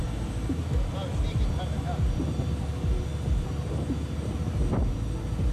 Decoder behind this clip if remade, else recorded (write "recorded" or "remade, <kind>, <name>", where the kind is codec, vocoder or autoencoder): recorded